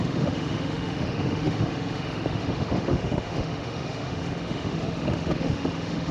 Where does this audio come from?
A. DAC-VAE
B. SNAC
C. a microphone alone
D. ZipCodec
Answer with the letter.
A